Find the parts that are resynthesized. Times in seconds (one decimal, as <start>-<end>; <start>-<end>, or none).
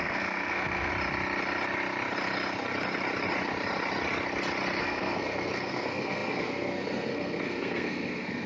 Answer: 0.0-0.9; 4.8-8.5